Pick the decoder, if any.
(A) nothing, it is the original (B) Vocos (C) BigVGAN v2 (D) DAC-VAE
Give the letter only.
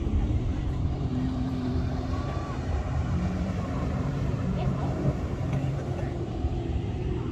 C